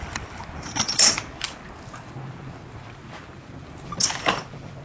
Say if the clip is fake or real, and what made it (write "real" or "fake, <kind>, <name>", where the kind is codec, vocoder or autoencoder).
real